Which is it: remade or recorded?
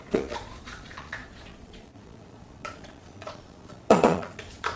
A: remade